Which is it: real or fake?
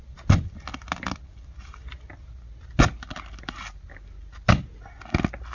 real